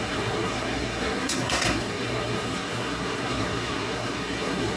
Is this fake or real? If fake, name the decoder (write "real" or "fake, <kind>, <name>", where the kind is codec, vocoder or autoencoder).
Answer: fake, codec, SNAC